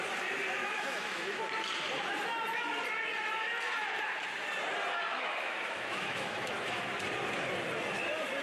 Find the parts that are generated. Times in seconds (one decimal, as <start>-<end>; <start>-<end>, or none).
0.6-1.4; 5.1-6.9